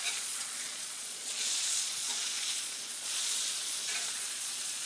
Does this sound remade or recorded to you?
remade